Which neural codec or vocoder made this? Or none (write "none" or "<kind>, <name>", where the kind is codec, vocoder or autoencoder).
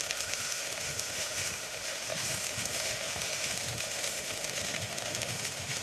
autoencoder, DAC-VAE